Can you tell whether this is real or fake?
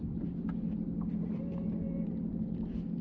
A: real